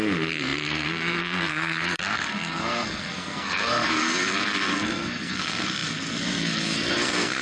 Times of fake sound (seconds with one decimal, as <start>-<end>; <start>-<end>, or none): 0.0-7.4